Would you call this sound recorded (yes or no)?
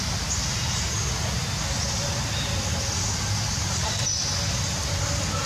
yes